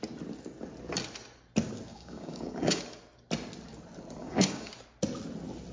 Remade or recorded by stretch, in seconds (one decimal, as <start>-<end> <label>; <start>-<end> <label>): 0.0-1.9 recorded; 1.9-2.8 remade; 2.8-4.2 recorded; 4.2-4.7 remade; 4.7-5.7 recorded